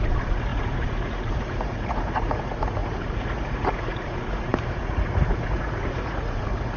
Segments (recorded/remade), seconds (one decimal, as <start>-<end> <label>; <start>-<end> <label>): 0.0-6.8 remade